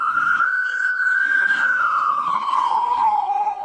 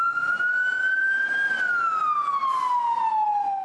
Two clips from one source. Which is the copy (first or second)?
first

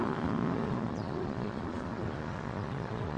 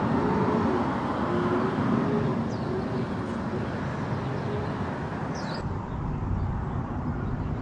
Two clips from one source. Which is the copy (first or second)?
first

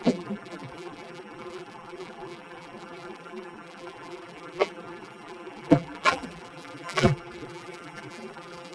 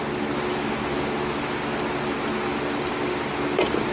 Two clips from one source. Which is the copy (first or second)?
first